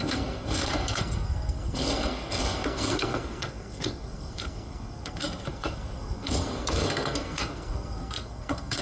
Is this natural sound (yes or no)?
no